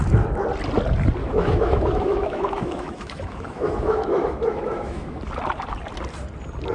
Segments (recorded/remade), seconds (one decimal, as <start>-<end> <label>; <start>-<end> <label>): 0.0-1.2 recorded; 1.2-5.2 remade; 5.2-6.7 recorded